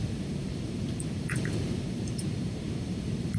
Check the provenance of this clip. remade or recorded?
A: remade